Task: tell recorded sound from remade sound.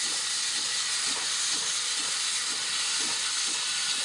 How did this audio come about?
recorded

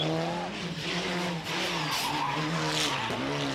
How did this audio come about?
recorded